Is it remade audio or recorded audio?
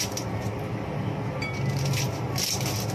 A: recorded